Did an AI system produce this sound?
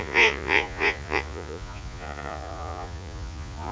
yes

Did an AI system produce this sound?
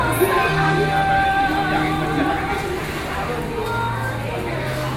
no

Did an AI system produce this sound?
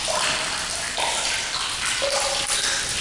no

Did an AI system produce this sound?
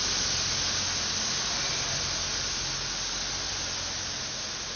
no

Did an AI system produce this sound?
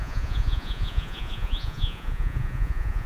yes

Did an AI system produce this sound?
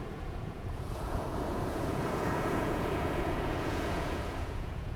yes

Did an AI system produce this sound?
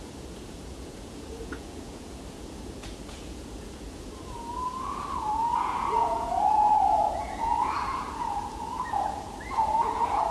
yes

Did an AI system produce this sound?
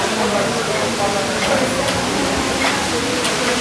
no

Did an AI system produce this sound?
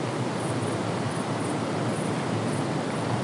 no